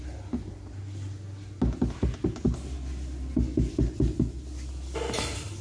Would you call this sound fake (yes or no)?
no